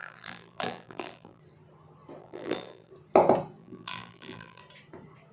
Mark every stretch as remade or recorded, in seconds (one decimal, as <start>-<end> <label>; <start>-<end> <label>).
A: 0.0-1.4 remade; 1.4-2.2 recorded; 2.2-2.9 remade; 2.9-3.6 recorded; 3.6-4.6 remade; 4.6-5.3 recorded